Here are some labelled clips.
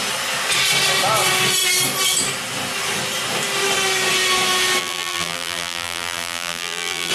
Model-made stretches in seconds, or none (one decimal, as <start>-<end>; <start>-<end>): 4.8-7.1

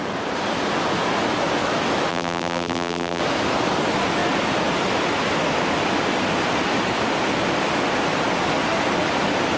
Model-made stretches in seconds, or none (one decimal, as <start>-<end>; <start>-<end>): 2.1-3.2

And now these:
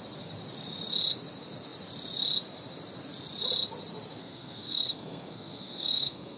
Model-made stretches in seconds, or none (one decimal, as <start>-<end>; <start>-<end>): 4.2-6.4

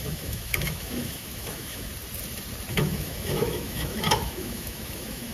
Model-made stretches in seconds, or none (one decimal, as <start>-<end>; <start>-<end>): 0.0-1.9; 2.7-5.3

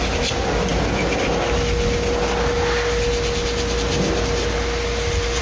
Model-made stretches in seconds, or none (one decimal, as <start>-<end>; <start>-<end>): none

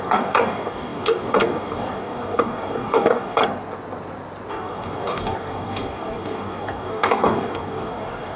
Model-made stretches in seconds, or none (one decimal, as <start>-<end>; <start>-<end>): 0.0-3.4; 4.5-8.4

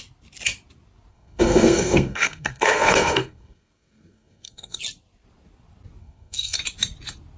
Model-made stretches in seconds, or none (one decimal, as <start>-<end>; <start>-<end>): 1.1-4.8; 6.0-6.6